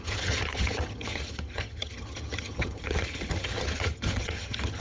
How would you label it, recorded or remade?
remade